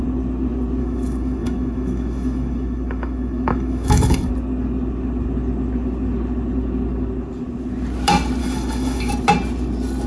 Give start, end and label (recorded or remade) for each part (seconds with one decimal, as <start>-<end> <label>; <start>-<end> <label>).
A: 0.0-0.8 recorded; 0.8-4.3 remade; 4.3-8.4 recorded; 8.4-9.1 remade; 9.1-10.1 recorded